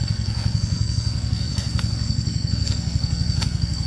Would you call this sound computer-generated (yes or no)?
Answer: yes